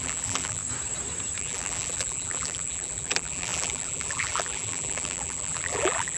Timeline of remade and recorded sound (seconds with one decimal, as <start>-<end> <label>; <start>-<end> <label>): 0.0-0.6 remade; 0.6-1.4 recorded; 1.4-6.2 remade